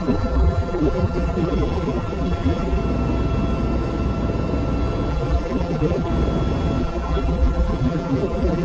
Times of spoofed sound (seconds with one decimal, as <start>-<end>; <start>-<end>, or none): 0.0-2.8; 5.1-6.1; 6.8-8.6

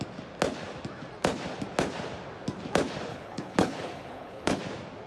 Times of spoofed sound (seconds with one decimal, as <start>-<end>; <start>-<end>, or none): 3.1-4.6

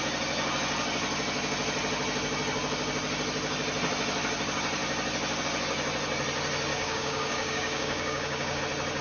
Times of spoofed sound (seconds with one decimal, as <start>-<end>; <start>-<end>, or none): 6.7-8.6

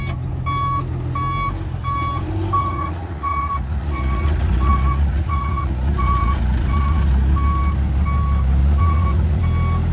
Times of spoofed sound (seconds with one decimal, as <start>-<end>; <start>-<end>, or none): 2.6-7.1; 8.6-9.4

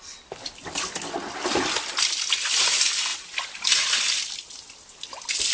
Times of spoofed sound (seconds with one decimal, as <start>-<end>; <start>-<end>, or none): none

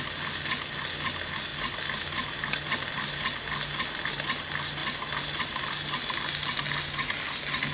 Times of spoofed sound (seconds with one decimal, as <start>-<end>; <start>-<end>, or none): none

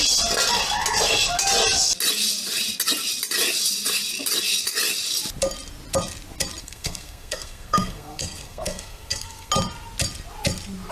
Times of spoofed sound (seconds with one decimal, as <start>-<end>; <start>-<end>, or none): 6.6-9.5

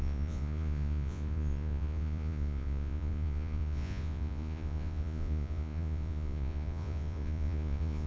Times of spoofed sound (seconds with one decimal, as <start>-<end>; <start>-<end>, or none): 0.0-8.1